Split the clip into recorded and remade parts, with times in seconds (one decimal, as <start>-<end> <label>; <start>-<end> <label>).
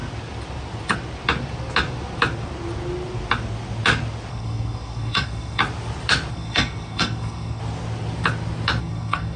0.0-4.3 recorded; 4.3-5.6 remade; 5.6-6.3 recorded; 6.3-7.6 remade; 7.6-8.8 recorded; 8.8-9.4 remade